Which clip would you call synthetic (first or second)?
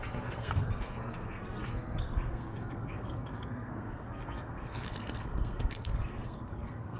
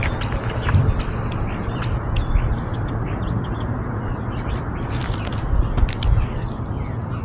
first